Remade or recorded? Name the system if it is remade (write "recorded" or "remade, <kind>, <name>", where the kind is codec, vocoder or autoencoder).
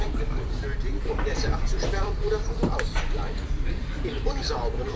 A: remade, vocoder, BigVGAN v2